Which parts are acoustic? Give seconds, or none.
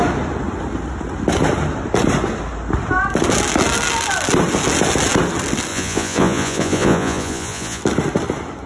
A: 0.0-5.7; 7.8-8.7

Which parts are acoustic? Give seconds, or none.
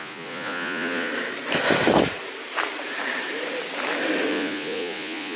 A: 1.1-4.3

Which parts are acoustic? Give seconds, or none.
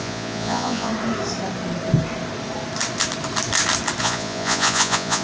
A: 0.9-4.0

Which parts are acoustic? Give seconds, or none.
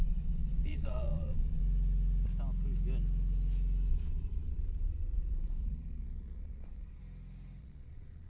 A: 1.6-3.9; 7.0-7.6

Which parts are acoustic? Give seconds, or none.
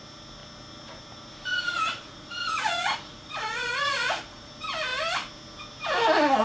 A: 0.0-1.5; 4.5-6.4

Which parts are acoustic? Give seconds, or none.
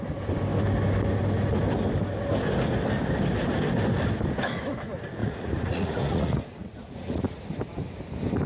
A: 0.0-5.2; 7.2-8.5